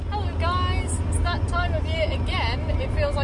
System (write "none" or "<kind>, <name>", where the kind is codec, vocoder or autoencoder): none